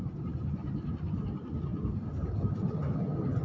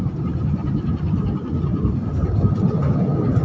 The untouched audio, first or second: first